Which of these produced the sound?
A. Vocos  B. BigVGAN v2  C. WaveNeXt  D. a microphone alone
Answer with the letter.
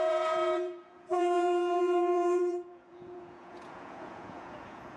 A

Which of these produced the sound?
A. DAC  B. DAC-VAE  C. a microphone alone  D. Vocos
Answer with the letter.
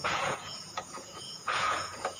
D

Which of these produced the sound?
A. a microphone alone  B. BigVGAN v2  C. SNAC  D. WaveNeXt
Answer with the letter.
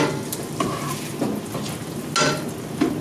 A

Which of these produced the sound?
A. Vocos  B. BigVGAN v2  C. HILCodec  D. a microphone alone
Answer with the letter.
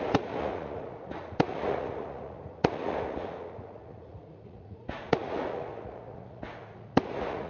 A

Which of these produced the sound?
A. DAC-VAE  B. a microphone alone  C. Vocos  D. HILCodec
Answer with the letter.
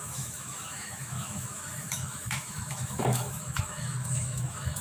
A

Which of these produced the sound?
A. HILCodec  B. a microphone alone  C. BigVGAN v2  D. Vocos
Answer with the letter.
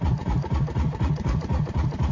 D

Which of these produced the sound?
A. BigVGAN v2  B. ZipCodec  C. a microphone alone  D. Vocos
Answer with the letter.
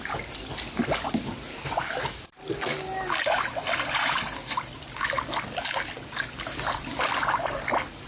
C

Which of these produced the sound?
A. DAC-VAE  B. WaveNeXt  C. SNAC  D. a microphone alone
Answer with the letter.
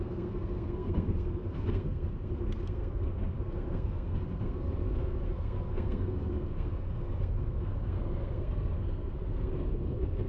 C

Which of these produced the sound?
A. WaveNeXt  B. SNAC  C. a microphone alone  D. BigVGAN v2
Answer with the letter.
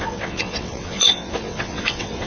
A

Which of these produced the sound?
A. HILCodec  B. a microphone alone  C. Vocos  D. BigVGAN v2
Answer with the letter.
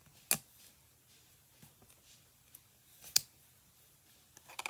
B